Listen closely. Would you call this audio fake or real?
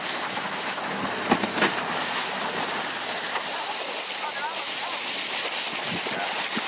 real